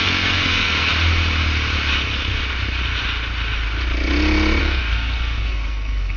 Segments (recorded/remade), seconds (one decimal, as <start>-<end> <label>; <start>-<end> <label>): 0.0-0.9 remade; 0.9-4.6 recorded; 4.6-6.2 remade